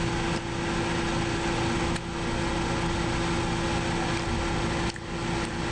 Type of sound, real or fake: real